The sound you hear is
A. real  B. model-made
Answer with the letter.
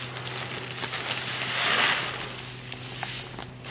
A